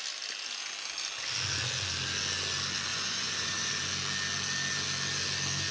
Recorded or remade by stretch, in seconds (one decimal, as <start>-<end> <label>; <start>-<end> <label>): 0.0-2.9 recorded; 2.9-3.7 remade; 3.7-5.7 recorded